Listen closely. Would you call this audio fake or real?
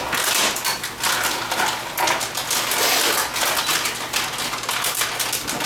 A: real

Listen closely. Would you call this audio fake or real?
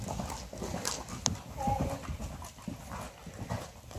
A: real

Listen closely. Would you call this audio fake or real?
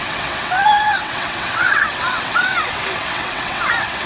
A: fake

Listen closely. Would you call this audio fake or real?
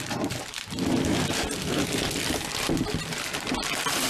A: real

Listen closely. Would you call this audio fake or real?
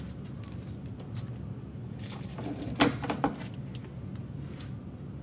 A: real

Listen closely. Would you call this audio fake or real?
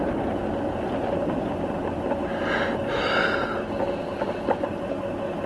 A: real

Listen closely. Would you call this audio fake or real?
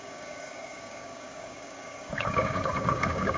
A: fake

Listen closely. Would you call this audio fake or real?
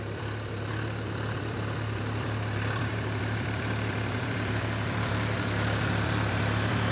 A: fake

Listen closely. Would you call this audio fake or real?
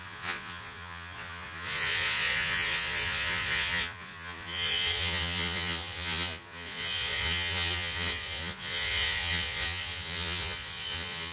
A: fake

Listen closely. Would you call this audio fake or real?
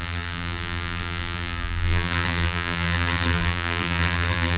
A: fake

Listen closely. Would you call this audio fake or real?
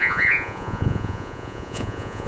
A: fake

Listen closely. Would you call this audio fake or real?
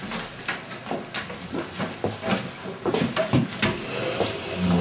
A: real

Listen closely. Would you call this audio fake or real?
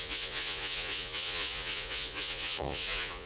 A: fake